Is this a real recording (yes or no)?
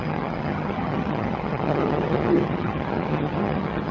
no